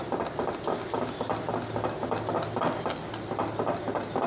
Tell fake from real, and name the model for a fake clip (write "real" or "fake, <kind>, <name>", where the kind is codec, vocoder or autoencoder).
real